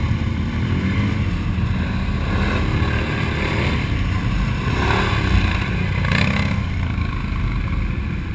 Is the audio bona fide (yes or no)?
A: yes